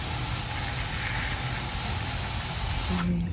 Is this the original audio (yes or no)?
yes